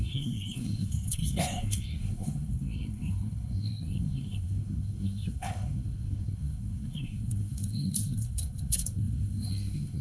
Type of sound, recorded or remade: remade